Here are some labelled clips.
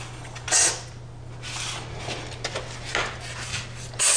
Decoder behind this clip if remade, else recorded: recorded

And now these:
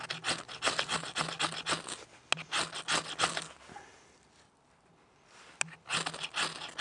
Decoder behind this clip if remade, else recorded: recorded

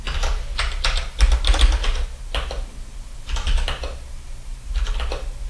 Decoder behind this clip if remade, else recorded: recorded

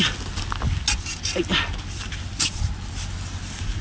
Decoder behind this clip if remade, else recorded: recorded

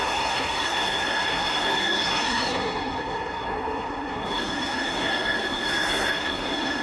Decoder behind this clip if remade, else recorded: remade, codec, SNAC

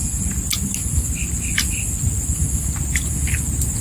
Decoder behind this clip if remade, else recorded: recorded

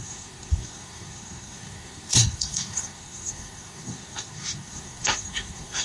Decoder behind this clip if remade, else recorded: remade, codec, SNAC